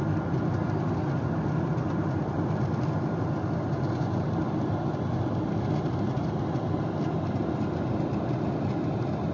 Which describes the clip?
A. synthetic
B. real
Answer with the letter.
B